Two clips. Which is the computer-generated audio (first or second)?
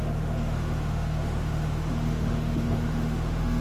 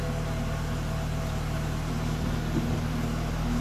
first